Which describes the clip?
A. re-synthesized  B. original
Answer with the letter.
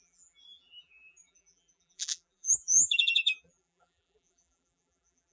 A